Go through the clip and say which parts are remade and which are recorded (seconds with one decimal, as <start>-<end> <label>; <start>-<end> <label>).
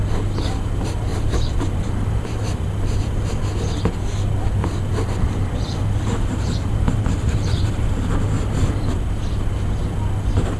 0.0-1.1 recorded; 1.1-3.3 remade; 3.3-4.6 recorded; 4.6-8.1 remade; 8.1-10.6 recorded